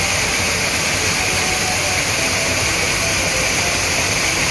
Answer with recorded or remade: recorded